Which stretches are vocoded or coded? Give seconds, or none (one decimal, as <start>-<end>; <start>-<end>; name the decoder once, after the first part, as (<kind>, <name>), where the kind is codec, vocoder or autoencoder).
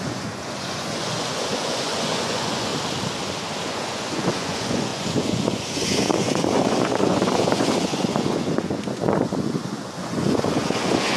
0.0-2.7 (vocoder, Vocos); 3.6-11.2